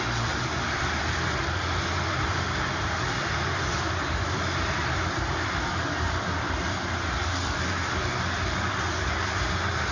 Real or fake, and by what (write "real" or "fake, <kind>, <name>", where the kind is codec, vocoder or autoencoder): fake, vocoder, BigVGAN v2